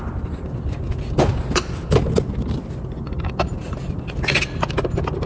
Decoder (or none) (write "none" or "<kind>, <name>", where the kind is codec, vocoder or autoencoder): none